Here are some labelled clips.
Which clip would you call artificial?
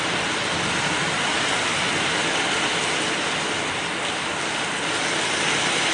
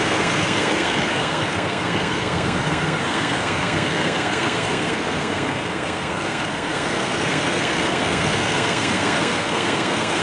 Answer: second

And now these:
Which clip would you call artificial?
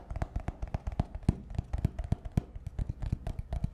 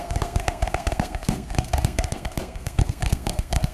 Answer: second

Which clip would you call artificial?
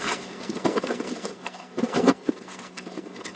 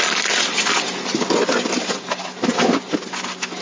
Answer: first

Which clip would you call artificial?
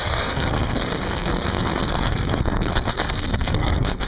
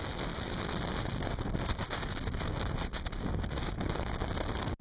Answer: first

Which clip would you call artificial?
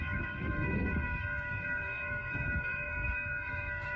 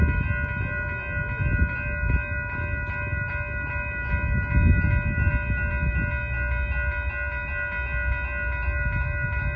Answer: first